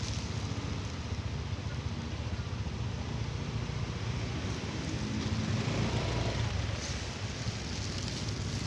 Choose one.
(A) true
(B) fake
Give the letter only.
A